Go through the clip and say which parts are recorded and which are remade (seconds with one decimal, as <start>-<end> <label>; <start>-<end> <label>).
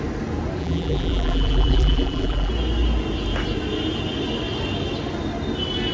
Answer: 0.0-0.6 recorded; 0.6-2.5 remade; 2.5-5.9 recorded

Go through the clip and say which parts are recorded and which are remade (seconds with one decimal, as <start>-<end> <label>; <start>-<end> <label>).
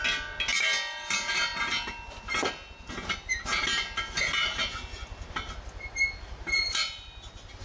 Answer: 0.0-6.8 recorded; 6.8-7.6 remade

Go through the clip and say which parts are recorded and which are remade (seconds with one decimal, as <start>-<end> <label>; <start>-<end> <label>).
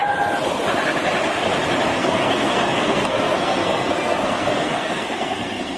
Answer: 0.0-1.9 recorded; 1.9-5.8 remade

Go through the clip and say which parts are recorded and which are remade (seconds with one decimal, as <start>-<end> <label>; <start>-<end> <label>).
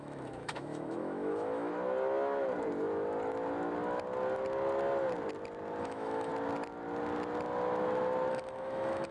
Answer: 0.0-1.7 remade; 1.7-5.8 recorded; 5.8-6.3 remade; 6.3-8.3 recorded; 8.3-9.1 remade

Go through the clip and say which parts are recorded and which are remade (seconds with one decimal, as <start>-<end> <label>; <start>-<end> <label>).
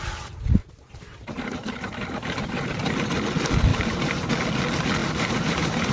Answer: 0.0-0.6 recorded; 0.6-2.9 remade; 2.9-3.7 recorded; 3.7-4.3 remade; 4.3-5.0 recorded; 5.0-5.9 remade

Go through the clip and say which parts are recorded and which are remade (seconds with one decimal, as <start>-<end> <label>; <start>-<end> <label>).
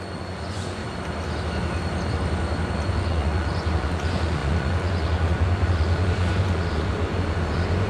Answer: 0.0-0.8 remade; 0.8-2.7 recorded; 2.7-7.9 remade